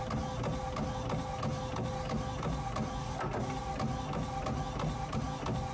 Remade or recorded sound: recorded